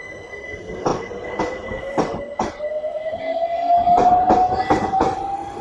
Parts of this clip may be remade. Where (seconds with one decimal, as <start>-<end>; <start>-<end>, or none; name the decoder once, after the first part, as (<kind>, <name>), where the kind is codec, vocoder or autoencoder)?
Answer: 0.9-3.2 (vocoder, BigVGAN v2)